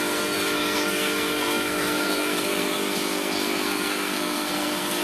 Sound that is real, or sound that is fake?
fake